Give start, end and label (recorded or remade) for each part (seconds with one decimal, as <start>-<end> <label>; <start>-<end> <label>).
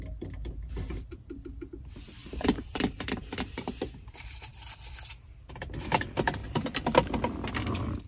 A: 0.0-2.2 recorded; 2.2-3.8 remade; 3.8-8.1 recorded